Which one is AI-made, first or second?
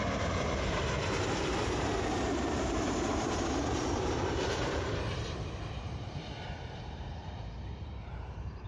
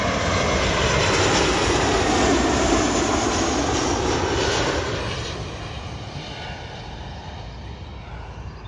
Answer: first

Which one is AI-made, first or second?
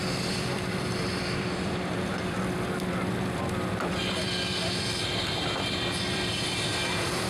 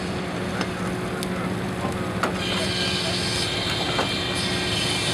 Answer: first